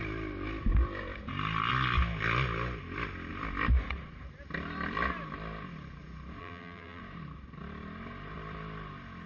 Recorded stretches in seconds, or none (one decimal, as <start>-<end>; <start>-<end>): 0.0-6.4; 7.0-9.3